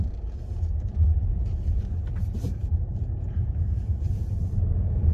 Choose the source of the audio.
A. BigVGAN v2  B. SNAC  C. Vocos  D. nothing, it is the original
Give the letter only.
A